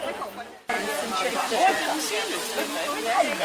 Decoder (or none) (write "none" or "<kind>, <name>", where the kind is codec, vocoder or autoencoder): none